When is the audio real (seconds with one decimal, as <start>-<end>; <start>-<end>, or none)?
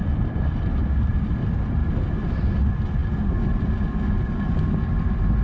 0.0-5.4